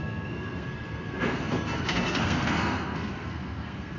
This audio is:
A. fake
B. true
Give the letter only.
A